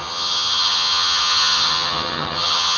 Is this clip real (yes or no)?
no